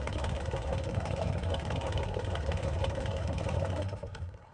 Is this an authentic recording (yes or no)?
no